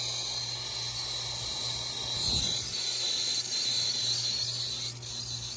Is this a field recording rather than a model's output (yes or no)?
yes